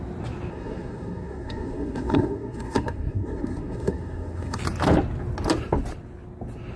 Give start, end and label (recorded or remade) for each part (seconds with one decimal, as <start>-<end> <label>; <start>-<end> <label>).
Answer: 0.0-0.5 recorded; 0.5-4.6 remade; 4.6-6.8 recorded